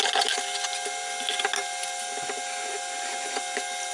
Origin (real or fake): real